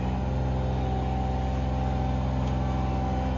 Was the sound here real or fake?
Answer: real